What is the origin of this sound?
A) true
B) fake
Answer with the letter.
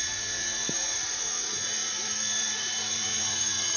B